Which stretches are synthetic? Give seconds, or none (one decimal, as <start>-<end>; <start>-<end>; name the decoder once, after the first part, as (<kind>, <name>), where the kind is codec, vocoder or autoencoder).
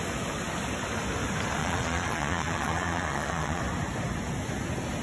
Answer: 1.6-3.6 (vocoder, Vocos)